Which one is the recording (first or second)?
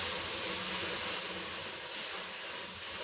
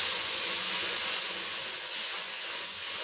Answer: first